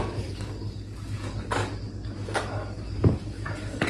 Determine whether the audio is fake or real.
fake